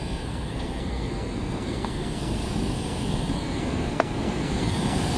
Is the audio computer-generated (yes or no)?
yes